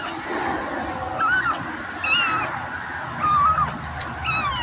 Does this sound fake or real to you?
real